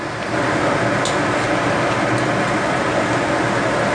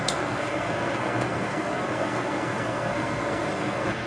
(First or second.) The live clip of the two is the first